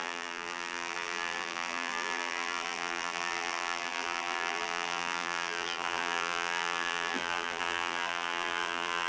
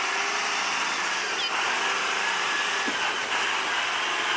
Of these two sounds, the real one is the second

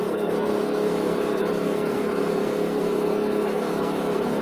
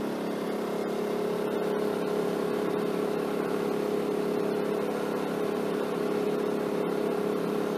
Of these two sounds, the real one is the second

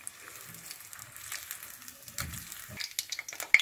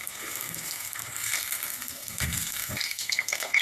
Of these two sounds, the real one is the first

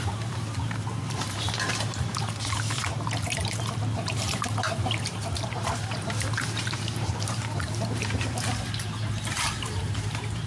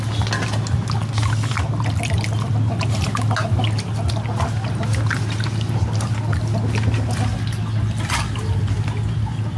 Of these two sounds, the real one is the second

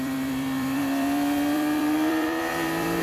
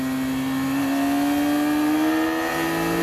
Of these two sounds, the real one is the second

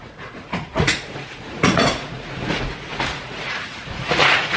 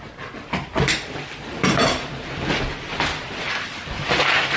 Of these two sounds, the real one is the second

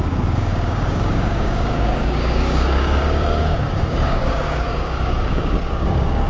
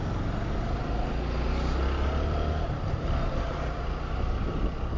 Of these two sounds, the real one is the second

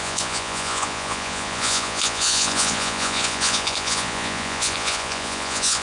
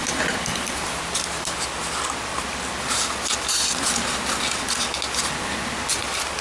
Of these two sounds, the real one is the second